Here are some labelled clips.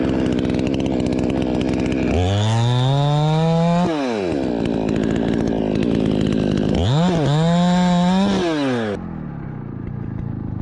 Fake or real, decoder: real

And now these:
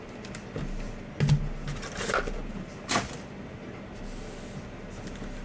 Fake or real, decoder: real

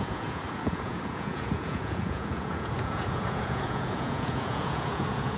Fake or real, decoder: fake, vocoder, Vocos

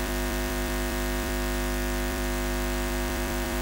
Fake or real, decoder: fake, vocoder, BigVGAN v2